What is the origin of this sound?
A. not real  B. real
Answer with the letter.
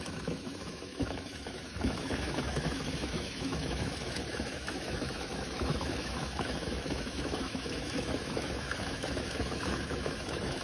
A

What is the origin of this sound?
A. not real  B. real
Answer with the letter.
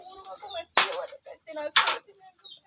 B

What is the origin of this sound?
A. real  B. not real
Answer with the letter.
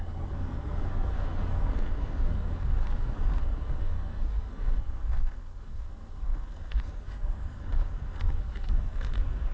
B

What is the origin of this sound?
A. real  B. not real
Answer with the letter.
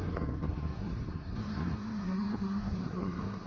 B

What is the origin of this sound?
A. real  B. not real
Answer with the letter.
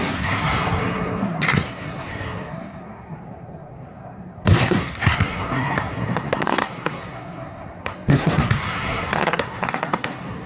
B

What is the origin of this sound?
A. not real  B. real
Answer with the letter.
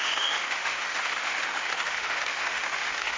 A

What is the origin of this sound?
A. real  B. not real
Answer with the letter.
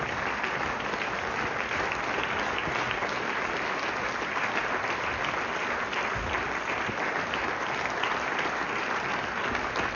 A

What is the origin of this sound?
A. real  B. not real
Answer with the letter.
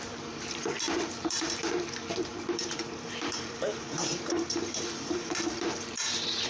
B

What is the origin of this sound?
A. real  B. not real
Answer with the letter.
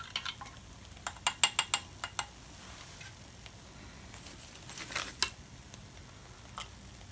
A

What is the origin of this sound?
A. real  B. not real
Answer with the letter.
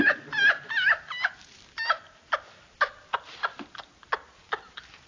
A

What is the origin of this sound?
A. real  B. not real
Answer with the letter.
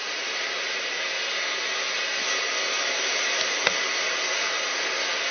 A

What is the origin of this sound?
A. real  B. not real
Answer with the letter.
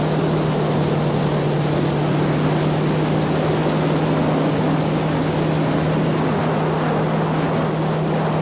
A